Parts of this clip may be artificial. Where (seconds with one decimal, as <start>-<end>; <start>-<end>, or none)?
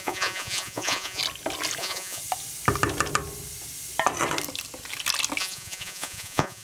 0.0-1.2; 1.8-2.2; 5.4-6.6